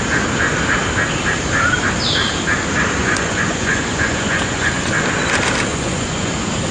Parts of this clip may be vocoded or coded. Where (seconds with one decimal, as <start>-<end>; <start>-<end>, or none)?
3.0-4.9; 5.7-6.3